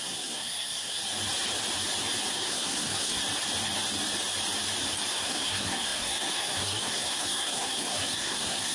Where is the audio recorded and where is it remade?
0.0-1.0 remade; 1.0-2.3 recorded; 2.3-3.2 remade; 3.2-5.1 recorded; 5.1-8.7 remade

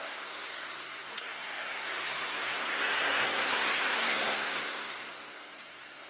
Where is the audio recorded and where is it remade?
0.0-6.1 remade

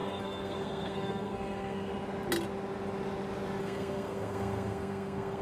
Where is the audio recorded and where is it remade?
0.0-1.9 remade; 1.9-3.6 recorded; 3.6-5.4 remade

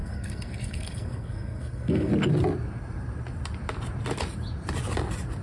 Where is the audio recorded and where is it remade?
0.0-2.1 remade; 2.1-5.4 recorded

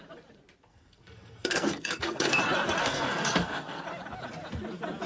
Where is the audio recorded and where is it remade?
0.0-0.7 recorded; 0.7-2.4 remade; 2.4-2.8 recorded; 2.8-3.8 remade; 3.8-5.1 recorded

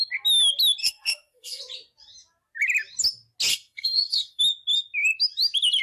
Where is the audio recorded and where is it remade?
0.0-0.8 recorded; 0.8-1.6 remade; 1.6-3.5 recorded; 3.5-4.4 remade; 4.4-5.8 recorded

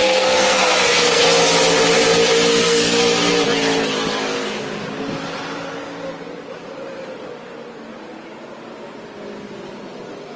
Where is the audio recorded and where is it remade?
0.0-1.2 remade; 1.2-2.5 recorded; 2.5-3.0 remade; 3.0-10.4 recorded

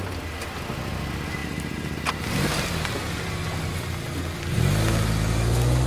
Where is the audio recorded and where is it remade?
0.0-5.9 recorded